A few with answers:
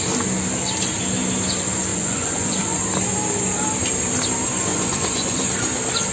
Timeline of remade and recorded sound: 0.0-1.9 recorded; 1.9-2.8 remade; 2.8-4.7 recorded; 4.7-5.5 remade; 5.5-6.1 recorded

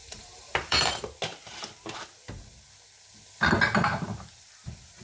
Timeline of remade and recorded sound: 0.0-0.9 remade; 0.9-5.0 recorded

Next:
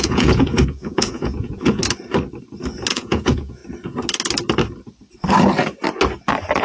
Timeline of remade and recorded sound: 0.0-1.8 remade; 1.8-2.9 recorded; 2.9-3.6 remade; 3.6-6.6 recorded

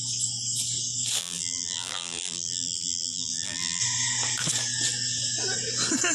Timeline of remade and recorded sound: 0.0-1.2 recorded; 1.2-3.8 remade; 3.8-6.1 recorded

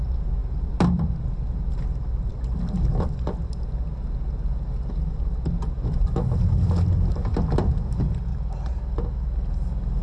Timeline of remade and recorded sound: 0.0-8.3 recorded; 8.3-8.8 remade; 8.8-10.0 recorded